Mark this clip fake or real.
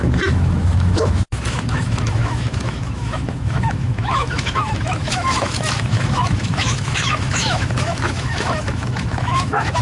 fake